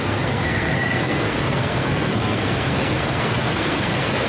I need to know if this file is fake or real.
fake